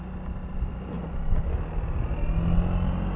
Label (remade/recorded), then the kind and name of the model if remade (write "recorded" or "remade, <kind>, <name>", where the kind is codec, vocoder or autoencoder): recorded